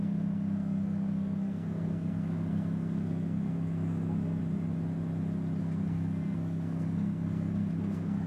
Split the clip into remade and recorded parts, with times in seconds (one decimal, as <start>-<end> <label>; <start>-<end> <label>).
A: 0.0-4.4 remade; 4.4-5.6 recorded; 5.6-8.3 remade

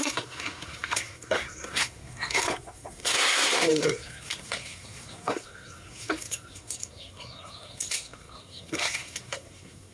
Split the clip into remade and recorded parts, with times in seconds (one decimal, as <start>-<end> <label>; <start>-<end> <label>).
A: 0.0-9.9 remade

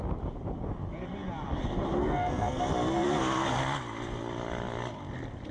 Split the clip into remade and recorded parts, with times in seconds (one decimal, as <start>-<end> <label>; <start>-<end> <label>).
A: 0.0-2.0 recorded; 2.0-2.6 remade; 2.6-5.5 recorded